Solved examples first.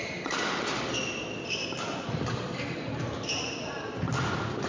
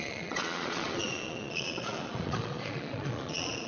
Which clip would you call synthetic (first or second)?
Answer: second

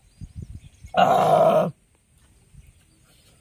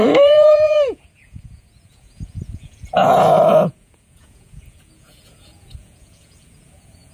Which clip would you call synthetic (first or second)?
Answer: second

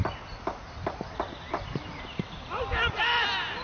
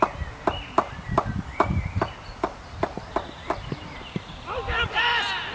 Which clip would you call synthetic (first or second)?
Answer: second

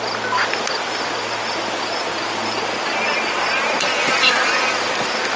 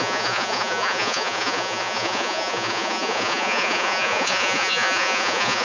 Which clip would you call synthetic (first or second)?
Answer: second